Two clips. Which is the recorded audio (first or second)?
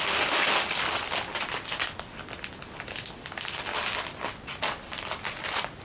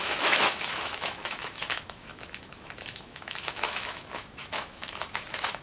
first